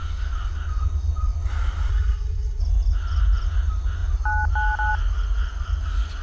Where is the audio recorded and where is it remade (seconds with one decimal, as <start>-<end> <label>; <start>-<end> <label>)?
0.0-1.9 recorded; 1.9-2.6 remade; 2.6-6.2 recorded